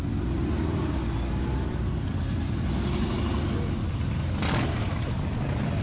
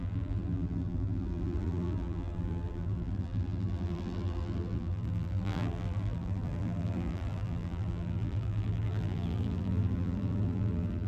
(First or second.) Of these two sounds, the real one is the first